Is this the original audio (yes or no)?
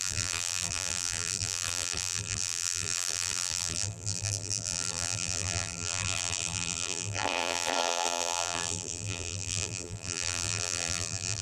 no